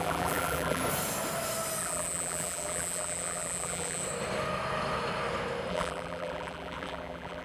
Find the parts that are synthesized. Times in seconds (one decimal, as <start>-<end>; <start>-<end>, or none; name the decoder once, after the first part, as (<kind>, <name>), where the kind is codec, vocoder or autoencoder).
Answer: 0.0-0.8 (vocoder, BigVGAN v2); 1.8-4.0; 5.7-7.4